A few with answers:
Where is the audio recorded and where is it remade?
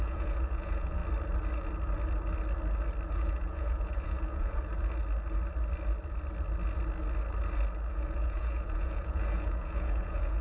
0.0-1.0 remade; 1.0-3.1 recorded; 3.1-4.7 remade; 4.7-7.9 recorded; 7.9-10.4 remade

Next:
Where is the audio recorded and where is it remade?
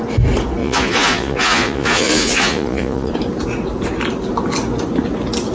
0.0-0.6 recorded; 0.6-3.1 remade; 3.1-5.5 recorded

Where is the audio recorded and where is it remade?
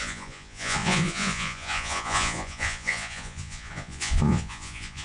0.0-5.0 remade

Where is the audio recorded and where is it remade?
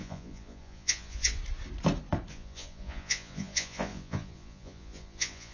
0.0-1.4 remade; 1.4-2.3 recorded; 2.3-5.5 remade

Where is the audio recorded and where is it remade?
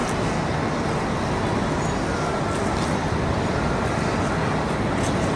0.0-5.4 recorded